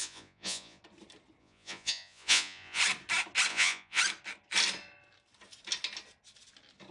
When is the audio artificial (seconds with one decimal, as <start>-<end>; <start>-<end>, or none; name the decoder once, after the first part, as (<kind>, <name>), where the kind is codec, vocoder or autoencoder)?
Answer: 0.0-0.8 (vocoder, Vocos); 1.4-2.8; 3.5-4.0